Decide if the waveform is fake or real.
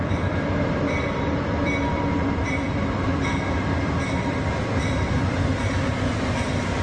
fake